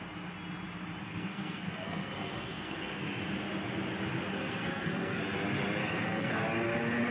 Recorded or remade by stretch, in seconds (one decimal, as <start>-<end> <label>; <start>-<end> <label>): 0.0-1.0 recorded; 1.0-3.2 remade; 3.2-4.3 recorded; 4.3-5.2 remade; 5.2-5.8 recorded; 5.8-6.4 remade; 6.4-7.1 recorded